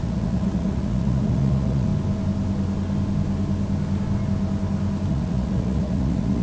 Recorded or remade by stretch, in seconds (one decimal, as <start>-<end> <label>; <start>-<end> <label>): 0.0-1.9 remade; 1.9-5.1 recorded; 5.1-6.4 remade